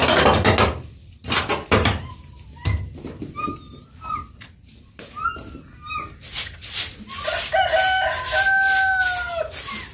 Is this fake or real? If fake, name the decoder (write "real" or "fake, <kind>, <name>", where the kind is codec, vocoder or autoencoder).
real